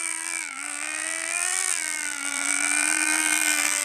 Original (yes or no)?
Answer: no